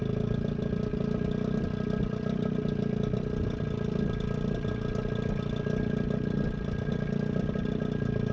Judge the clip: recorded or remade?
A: recorded